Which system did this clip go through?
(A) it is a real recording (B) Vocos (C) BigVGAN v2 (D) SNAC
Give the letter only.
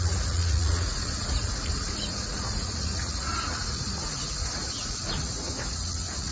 B